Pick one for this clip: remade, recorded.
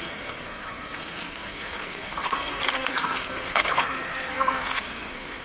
remade